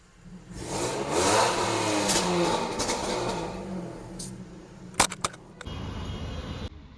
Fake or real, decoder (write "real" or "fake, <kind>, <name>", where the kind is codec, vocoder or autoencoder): real